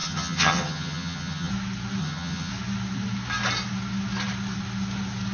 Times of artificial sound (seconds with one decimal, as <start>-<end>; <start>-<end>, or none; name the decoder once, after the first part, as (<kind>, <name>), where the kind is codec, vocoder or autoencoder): 0.0-1.5 (vocoder, HiFi-GAN); 2.0-2.5